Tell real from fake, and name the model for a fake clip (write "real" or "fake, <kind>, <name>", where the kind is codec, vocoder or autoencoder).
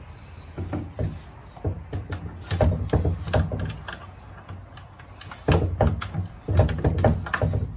real